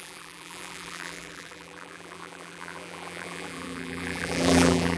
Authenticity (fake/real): fake